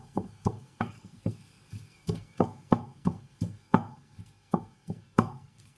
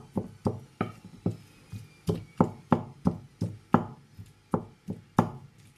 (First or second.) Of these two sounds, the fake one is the first